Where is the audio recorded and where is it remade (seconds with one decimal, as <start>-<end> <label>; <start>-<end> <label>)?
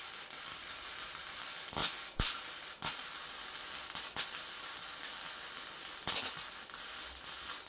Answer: 0.0-0.5 recorded; 0.5-1.4 remade; 1.4-7.7 recorded